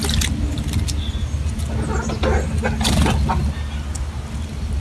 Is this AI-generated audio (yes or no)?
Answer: no